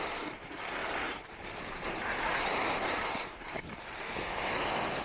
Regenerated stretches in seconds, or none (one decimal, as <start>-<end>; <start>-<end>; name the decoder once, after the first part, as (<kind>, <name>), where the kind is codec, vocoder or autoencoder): 0.8-3.8 (vocoder, BigVGAN v2)